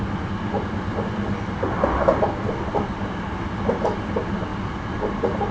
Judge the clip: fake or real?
real